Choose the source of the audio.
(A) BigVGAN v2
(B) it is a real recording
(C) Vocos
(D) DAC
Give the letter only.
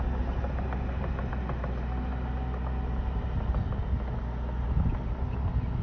B